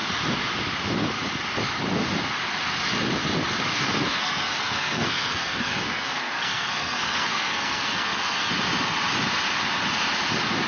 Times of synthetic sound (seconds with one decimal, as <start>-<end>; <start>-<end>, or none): 4.1-8.5